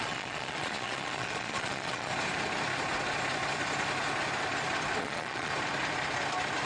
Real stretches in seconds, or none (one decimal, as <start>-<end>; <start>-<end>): 2.1-5.0; 5.5-6.7